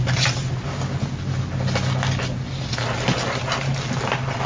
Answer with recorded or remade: recorded